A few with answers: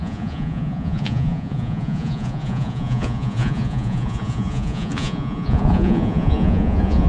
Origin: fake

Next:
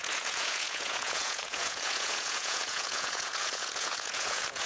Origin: fake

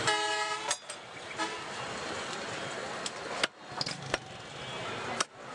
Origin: real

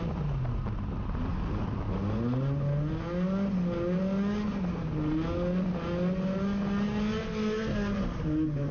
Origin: real